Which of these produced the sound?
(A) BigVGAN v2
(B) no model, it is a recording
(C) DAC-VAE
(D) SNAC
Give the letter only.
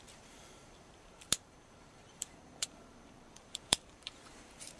A